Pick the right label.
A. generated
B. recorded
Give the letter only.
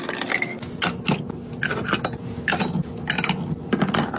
B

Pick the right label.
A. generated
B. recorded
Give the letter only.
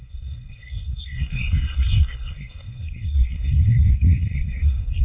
A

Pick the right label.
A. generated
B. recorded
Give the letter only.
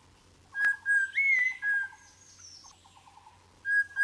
B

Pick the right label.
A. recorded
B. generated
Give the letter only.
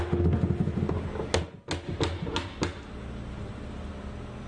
A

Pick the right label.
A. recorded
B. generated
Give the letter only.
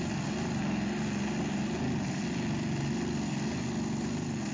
A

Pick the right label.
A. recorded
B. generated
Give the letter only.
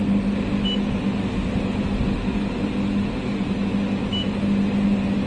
A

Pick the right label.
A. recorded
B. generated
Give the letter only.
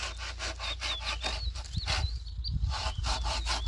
A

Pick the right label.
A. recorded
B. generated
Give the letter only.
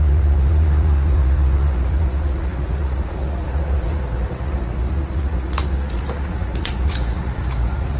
B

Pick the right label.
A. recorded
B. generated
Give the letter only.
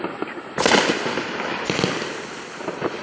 A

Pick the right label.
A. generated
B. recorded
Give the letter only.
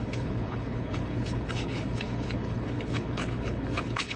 A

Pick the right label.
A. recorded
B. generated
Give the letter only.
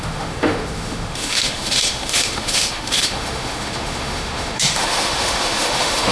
B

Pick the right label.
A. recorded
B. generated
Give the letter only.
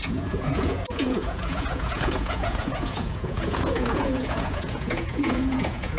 B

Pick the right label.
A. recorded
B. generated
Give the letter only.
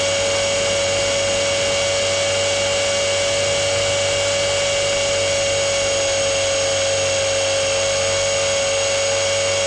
A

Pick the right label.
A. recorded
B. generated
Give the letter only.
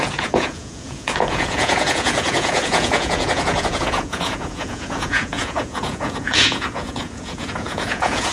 B